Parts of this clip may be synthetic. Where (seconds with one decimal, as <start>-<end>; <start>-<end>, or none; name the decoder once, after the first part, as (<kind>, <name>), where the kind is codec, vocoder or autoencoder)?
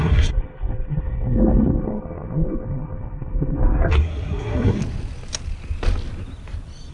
0.0-4.8 (codec, SNAC)